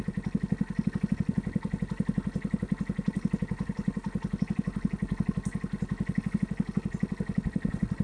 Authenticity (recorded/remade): recorded